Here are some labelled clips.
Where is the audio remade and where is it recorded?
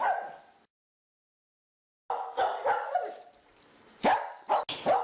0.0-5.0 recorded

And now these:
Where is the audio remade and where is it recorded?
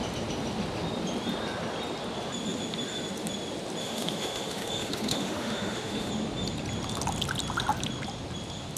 0.0-3.8 recorded; 3.8-6.1 remade; 6.1-8.8 recorded